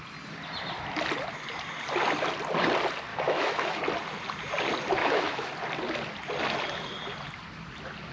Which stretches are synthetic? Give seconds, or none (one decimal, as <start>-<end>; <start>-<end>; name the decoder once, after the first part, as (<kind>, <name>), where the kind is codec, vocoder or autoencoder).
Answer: 3.1-3.8 (autoencoder, DAC-VAE); 5.0-5.5